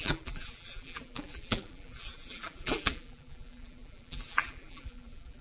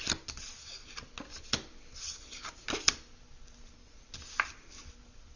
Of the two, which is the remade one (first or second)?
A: first